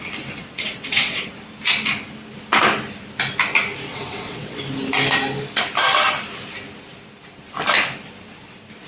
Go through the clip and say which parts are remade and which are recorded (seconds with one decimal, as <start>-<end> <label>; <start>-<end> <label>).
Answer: 0.0-0.4 recorded; 0.4-1.3 remade; 1.3-3.9 recorded; 3.9-4.6 remade; 4.6-8.9 recorded